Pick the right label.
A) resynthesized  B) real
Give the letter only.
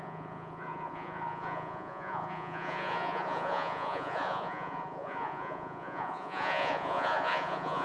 A